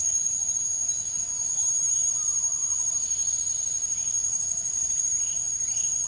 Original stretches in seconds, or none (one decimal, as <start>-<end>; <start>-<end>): 1.6-4.2; 5.0-6.1